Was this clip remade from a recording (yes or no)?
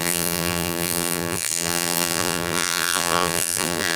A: yes